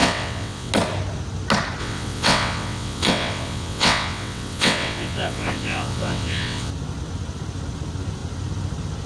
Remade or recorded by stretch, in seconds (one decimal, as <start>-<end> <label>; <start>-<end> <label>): 0.0-0.7 remade; 0.7-1.8 recorded; 1.8-6.7 remade; 6.7-9.1 recorded